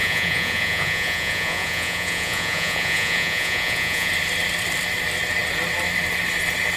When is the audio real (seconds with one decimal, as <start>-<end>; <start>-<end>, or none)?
4.1-6.8